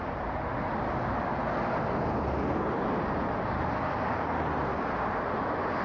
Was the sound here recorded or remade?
remade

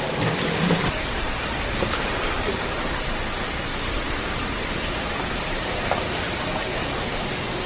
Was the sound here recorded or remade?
remade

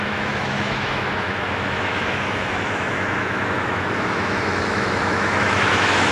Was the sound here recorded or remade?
remade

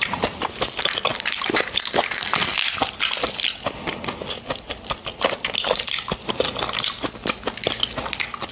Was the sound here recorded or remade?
recorded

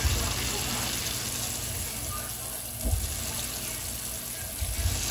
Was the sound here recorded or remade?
recorded